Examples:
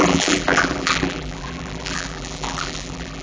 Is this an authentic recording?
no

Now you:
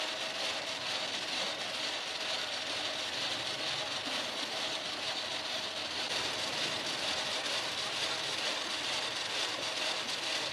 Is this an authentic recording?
no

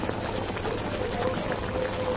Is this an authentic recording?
yes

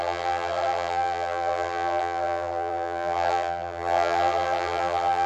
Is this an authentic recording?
no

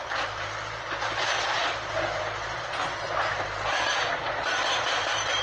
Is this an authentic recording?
no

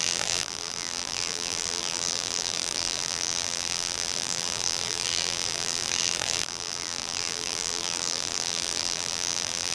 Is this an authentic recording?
no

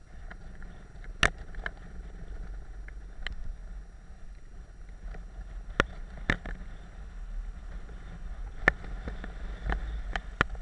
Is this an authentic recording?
yes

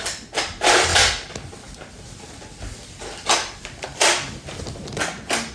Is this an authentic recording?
yes